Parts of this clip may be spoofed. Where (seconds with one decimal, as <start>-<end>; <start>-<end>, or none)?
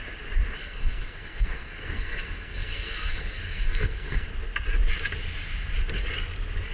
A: 0.6-4.3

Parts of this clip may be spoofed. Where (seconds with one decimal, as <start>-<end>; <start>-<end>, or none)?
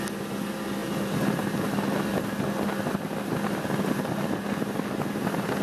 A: none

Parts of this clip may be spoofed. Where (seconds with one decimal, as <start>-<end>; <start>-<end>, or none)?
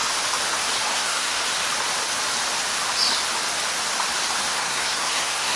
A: 0.9-1.4; 4.4-5.6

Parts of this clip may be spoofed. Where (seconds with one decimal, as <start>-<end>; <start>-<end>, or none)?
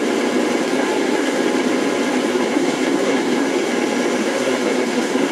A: 0.6-1.4; 2.3-3.7; 4.2-5.3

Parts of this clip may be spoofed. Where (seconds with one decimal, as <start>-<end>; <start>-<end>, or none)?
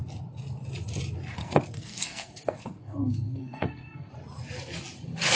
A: 1.4-4.1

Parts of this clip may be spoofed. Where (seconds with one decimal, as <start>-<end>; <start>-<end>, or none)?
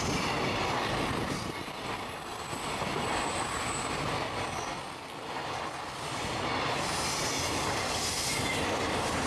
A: none